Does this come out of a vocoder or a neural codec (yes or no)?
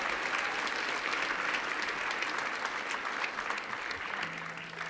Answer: no